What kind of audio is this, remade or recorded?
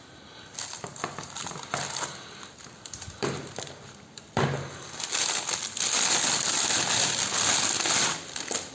recorded